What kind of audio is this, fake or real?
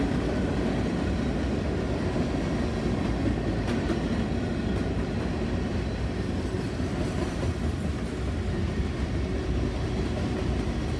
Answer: real